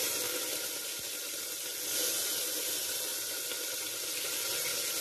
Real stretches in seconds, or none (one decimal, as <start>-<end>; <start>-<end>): 0.0-3.1; 3.8-5.0